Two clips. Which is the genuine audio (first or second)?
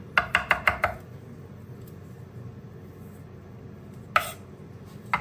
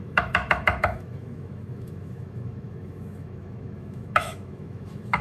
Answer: first